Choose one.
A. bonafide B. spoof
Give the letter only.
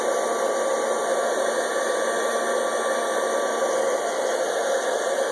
A